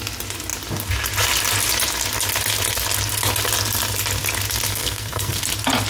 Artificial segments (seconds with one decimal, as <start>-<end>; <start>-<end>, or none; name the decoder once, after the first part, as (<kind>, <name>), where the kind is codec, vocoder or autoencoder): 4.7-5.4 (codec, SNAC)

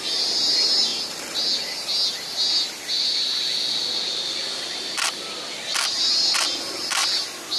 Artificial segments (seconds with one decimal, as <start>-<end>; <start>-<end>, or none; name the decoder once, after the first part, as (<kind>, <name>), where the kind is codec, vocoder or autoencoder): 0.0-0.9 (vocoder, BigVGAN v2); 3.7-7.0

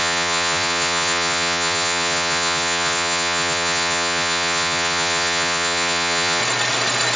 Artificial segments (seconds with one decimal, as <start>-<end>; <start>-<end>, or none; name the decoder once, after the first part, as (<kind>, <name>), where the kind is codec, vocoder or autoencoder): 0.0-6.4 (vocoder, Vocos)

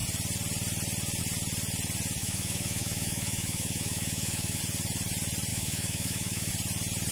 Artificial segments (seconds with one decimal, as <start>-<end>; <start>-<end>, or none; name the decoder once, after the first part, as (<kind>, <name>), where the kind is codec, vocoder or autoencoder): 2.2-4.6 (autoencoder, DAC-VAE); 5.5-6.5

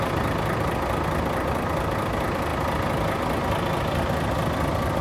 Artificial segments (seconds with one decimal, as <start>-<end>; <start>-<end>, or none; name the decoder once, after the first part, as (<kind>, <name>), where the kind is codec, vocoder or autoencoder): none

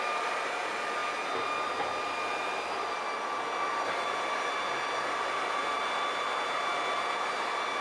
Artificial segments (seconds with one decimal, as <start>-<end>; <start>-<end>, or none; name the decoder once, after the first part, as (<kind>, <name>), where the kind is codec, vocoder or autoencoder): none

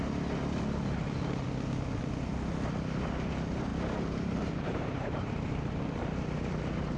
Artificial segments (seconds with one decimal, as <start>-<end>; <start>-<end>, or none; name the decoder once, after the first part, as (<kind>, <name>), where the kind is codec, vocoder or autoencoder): 3.7-5.5 (vocoder, BigVGAN v2)

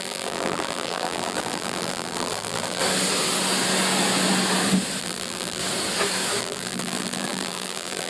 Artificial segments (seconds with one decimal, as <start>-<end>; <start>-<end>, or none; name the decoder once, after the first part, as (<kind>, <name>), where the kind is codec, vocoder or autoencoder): 0.0-2.8 (vocoder, BigVGAN v2); 5.0-5.6; 6.4-8.1